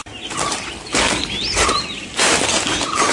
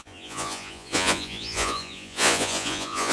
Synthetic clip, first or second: second